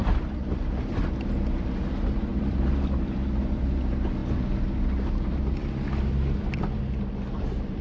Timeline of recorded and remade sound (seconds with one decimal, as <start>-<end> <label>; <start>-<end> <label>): 0.0-1.3 remade; 1.3-2.3 recorded; 2.3-3.6 remade; 3.6-7.8 recorded